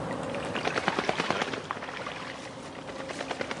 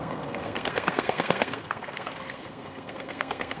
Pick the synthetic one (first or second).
second